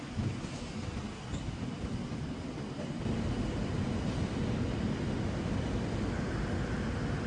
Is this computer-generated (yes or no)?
no